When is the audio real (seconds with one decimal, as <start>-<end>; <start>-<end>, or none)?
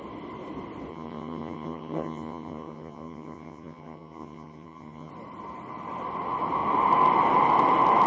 0.0-0.9; 5.1-8.1